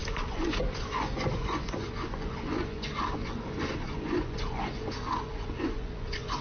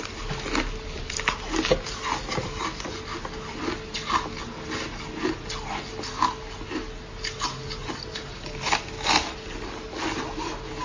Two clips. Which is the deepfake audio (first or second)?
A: first